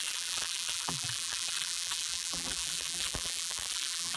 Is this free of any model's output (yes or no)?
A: no